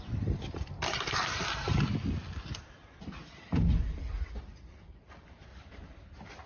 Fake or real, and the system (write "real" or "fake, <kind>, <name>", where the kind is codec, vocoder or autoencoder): fake, vocoder, BigVGAN v2